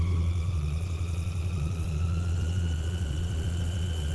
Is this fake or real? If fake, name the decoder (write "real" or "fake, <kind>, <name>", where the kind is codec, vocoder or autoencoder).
fake, vocoder, Vocos